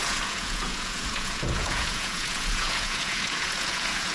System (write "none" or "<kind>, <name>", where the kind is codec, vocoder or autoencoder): vocoder, Vocos